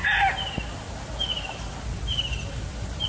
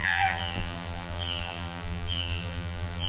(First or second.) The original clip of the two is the first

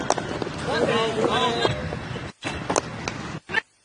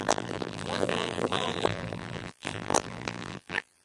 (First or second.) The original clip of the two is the first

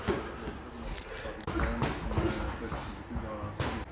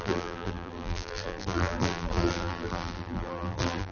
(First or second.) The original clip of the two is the first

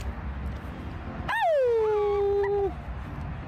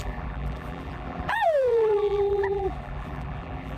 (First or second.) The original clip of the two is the first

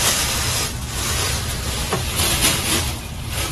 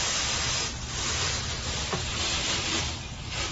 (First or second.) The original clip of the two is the first